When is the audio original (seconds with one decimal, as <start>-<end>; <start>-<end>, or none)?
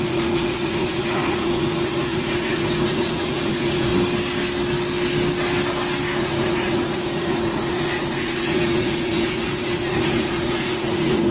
3.9-6.2